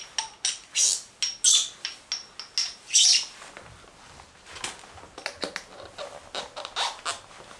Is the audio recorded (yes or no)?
yes